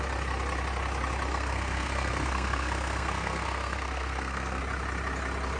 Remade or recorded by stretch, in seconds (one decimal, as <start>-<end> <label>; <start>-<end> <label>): 0.0-1.3 recorded; 1.3-4.6 remade; 4.6-5.6 recorded